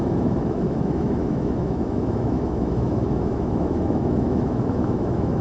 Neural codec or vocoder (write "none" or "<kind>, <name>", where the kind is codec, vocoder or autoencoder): autoencoder, DAC-VAE